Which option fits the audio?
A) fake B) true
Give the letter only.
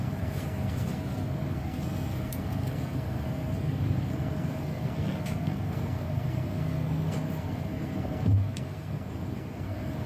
A